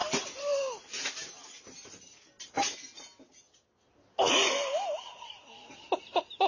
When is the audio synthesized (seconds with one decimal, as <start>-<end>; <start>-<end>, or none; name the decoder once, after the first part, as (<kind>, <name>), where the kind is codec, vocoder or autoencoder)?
none